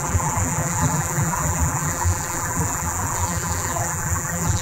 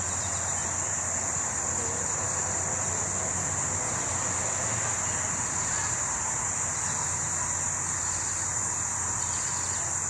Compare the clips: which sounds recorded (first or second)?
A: second